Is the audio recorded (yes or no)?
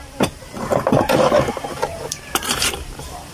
no